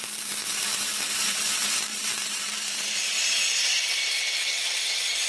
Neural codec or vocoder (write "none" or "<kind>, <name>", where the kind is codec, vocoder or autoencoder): vocoder, BigVGAN v2